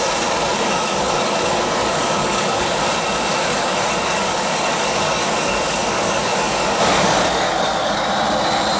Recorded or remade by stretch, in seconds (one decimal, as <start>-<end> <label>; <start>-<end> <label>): 0.0-0.5 recorded; 0.5-2.9 remade; 2.9-3.3 recorded; 3.3-8.1 remade; 8.1-8.8 recorded